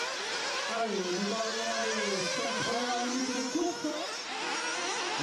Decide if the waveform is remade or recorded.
recorded